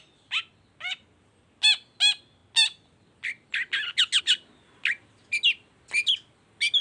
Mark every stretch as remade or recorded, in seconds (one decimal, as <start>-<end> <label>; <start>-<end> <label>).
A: 0.0-6.8 recorded